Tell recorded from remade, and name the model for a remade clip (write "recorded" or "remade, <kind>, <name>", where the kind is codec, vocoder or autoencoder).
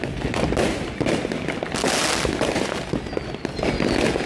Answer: recorded